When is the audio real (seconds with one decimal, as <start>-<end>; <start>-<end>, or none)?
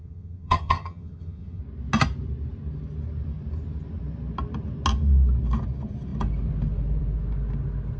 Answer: 1.6-8.0